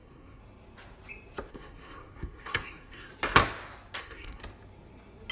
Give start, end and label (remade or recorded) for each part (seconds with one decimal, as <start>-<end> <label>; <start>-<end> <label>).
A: 0.0-0.4 remade; 0.4-1.5 recorded; 1.5-3.1 remade; 3.1-4.0 recorded; 4.0-4.4 remade; 4.4-5.3 recorded